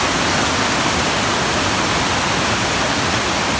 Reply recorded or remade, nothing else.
recorded